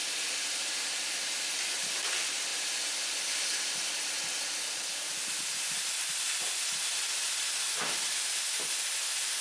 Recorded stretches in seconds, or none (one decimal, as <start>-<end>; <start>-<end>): 0.0-9.4